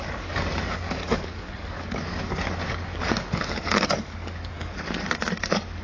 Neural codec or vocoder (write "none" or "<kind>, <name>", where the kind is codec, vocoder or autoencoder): codec, DAC